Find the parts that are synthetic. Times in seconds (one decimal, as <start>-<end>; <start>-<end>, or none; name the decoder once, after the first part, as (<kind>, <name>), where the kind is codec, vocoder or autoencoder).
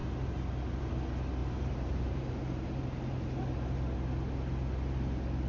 1.4-2.2 (vocoder, BigVGAN v2)